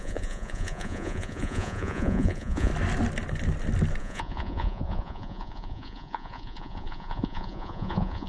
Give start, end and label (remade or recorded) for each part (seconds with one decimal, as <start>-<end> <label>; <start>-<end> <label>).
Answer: 0.0-2.7 remade; 2.7-4.0 recorded; 4.0-8.3 remade